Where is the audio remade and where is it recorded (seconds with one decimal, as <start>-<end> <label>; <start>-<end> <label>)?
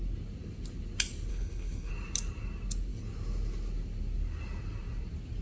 0.0-1.3 recorded; 1.3-1.9 remade; 1.9-5.4 recorded